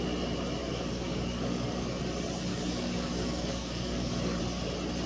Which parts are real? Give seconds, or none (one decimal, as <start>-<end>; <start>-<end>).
0.0-0.6; 2.0-2.5; 4.4-5.1

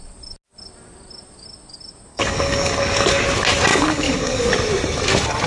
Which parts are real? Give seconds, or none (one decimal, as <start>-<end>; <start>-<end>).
0.0-2.1; 3.2-3.7; 4.5-5.5

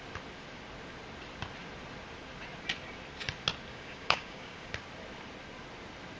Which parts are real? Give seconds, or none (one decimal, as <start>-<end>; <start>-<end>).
0.0-3.7; 4.7-6.2

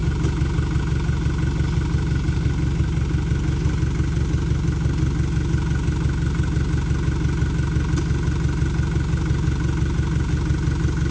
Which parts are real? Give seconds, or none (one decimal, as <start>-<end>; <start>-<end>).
0.0-11.1